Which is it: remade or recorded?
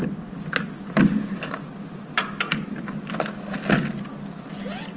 recorded